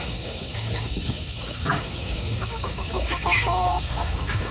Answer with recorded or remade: remade